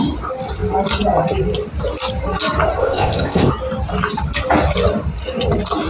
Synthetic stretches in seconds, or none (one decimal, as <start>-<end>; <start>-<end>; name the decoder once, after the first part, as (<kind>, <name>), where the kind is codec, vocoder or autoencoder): 2.8-3.5 (codec, ZipCodec)